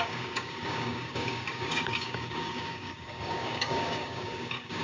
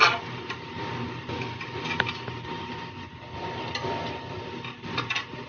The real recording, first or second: second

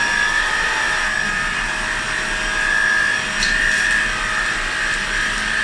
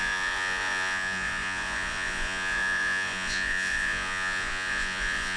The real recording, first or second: first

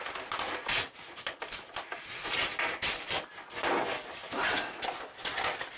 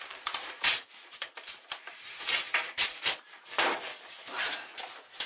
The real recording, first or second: first